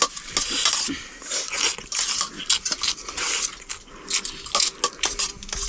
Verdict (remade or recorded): recorded